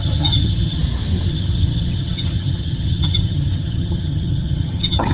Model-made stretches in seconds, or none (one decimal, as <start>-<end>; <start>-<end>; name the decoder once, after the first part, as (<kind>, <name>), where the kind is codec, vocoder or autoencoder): 0.0-0.8 (vocoder, HiFi-GAN); 1.3-5.1